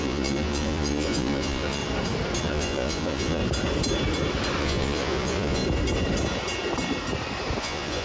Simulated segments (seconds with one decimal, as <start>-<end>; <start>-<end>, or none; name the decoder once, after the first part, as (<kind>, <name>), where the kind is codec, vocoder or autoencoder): 0.0-1.8 (vocoder, Vocos); 2.4-3.4; 4.6-5.6; 7.6-8.0